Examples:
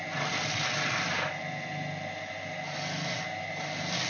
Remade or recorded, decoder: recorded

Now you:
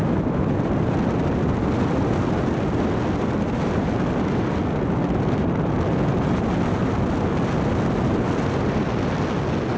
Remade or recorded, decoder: recorded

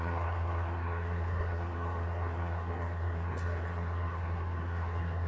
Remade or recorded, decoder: remade, codec, SNAC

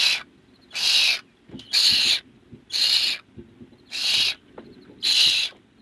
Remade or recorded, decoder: recorded